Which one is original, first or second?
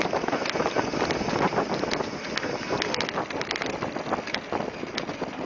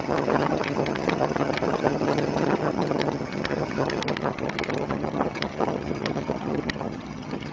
first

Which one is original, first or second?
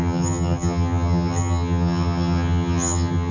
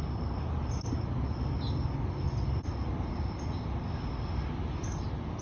second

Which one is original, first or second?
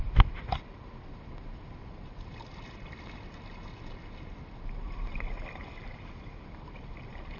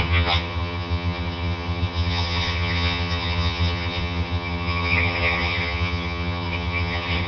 first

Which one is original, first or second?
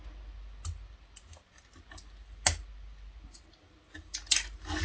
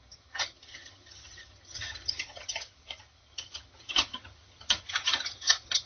first